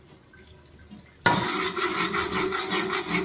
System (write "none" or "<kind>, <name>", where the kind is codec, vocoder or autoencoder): none